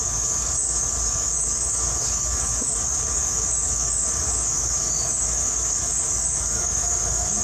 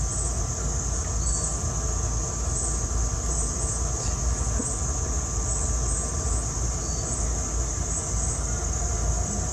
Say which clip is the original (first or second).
second